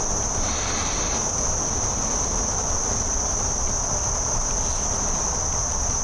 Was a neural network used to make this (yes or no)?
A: no